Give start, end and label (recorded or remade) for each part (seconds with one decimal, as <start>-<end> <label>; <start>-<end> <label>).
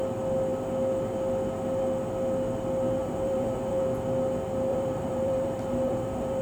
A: 0.0-3.0 recorded; 3.0-3.8 remade; 3.8-4.7 recorded; 4.7-6.4 remade